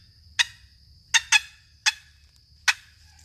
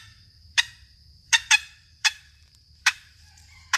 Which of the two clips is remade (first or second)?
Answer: second